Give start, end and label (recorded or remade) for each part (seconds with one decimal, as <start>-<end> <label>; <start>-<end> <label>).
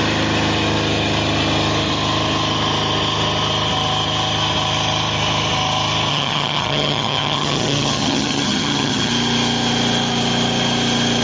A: 0.0-6.1 recorded; 6.1-9.1 remade; 9.1-11.2 recorded